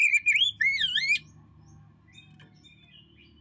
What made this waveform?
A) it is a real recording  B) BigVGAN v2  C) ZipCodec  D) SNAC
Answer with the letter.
A